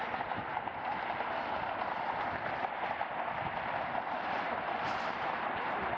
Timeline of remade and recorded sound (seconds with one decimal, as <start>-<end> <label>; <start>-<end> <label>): 0.0-0.5 remade; 0.5-4.1 recorded; 4.1-6.0 remade